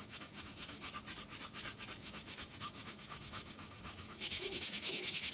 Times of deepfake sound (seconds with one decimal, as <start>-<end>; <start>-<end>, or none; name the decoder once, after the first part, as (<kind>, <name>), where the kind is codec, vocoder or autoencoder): 0.0-0.9 (autoencoder, DAC-VAE); 2.0-5.3